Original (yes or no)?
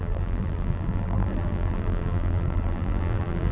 no